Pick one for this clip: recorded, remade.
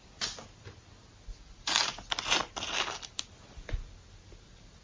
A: recorded